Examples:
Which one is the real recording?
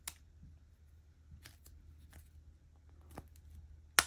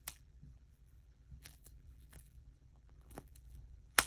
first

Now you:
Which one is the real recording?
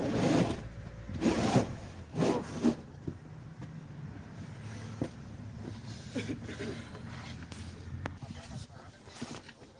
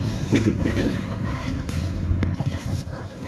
first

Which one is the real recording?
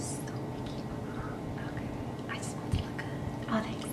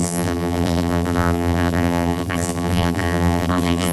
first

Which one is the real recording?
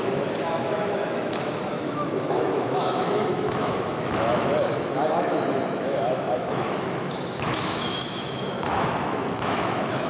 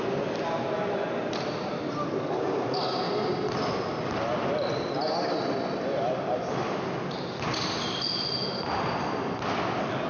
second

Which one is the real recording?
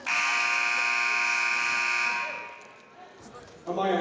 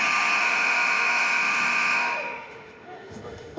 first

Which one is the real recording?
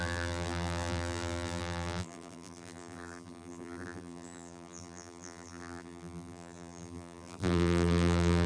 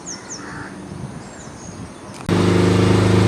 second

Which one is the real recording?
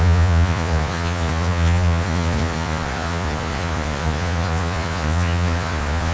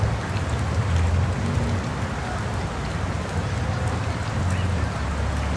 second